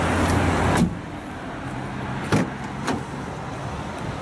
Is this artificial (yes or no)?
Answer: no